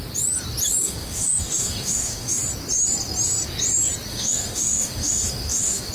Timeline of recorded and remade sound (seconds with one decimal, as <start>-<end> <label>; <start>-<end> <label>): 0.0-0.8 recorded; 0.8-2.4 remade; 2.4-4.1 recorded; 4.1-5.9 remade